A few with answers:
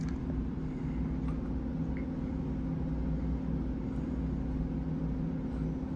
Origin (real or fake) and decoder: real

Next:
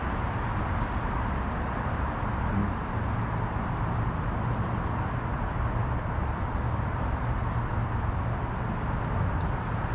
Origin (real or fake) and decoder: real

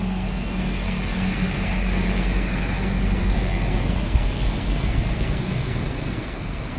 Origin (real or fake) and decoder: fake, codec, SNAC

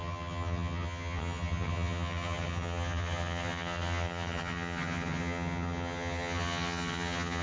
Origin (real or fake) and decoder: fake, vocoder, HiFi-GAN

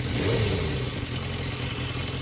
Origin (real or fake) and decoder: real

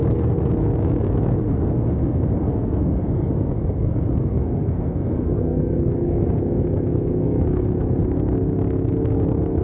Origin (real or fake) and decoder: fake, codec, SNAC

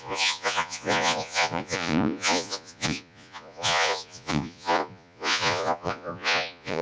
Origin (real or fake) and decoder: fake, vocoder, Vocos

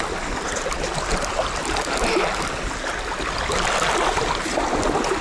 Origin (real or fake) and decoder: real